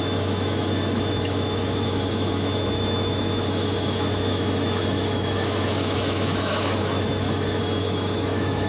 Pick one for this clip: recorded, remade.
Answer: remade